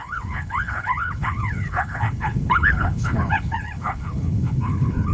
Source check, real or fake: fake